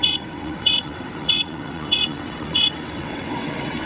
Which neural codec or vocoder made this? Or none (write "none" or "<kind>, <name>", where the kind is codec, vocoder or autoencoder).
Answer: vocoder, WaveNeXt